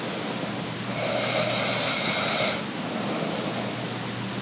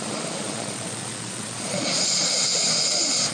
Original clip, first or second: first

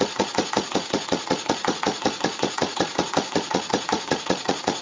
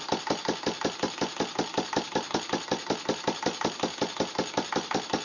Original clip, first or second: second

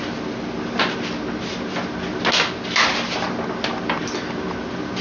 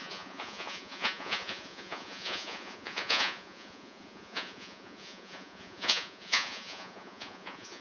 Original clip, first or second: first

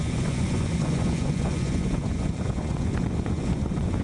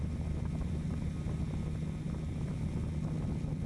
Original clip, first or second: second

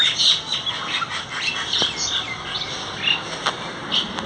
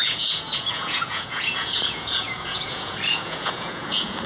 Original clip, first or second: first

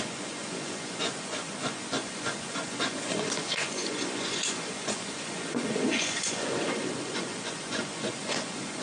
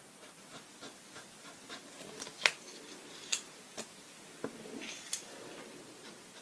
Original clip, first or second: second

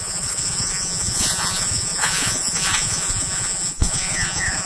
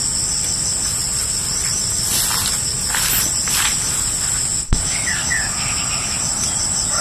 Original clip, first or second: second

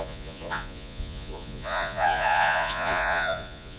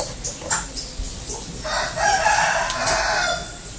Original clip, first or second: second